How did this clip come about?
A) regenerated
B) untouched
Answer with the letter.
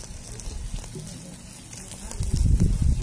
B